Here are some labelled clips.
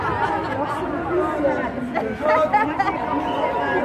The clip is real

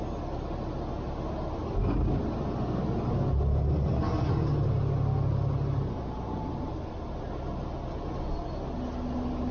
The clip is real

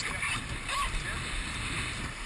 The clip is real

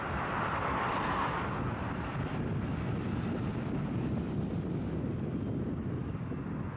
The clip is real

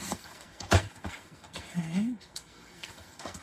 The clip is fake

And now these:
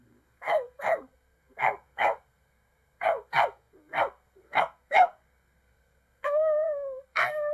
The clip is fake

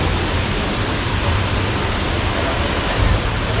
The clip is real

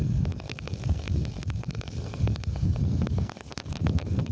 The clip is fake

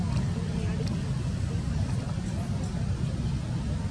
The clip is real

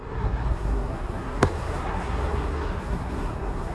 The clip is fake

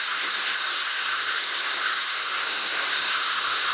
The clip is fake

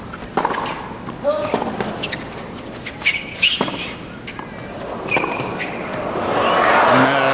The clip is real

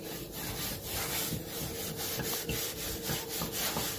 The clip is real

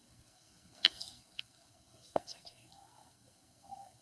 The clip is fake